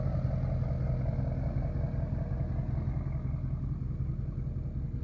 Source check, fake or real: real